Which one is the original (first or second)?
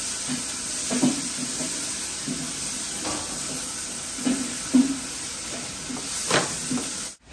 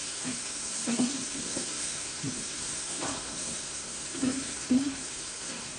first